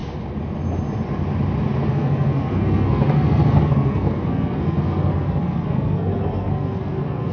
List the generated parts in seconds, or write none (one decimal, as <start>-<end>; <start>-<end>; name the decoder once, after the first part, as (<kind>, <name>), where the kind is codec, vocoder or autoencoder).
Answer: 1.9-7.3 (codec, SNAC)